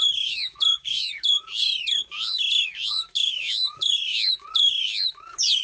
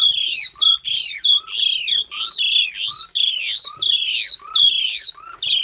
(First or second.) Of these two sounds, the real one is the second